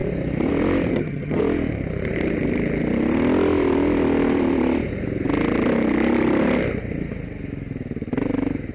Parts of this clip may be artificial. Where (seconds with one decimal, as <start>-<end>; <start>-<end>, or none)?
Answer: 0.9-1.4